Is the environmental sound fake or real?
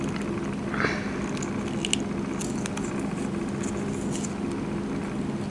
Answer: real